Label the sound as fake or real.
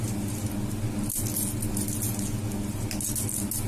real